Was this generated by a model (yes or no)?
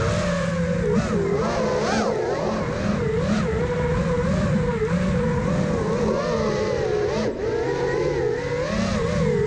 no